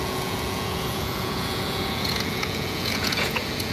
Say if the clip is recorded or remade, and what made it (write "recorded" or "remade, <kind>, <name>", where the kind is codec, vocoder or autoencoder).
remade, vocoder, Vocos